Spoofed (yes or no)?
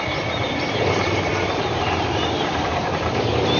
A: yes